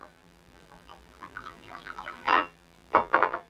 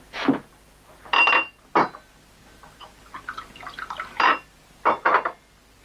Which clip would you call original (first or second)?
second